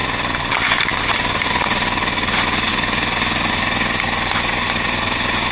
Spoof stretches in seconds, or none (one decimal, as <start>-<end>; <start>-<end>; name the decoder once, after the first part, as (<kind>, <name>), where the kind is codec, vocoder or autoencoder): 0.9-1.5 (vocoder, BigVGAN v2)